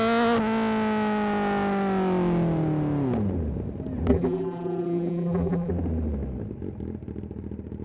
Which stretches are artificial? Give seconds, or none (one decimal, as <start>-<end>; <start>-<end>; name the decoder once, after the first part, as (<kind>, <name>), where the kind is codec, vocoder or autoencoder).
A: 4.1-5.7 (vocoder, BigVGAN v2)